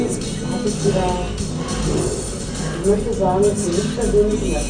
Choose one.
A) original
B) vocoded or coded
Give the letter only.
A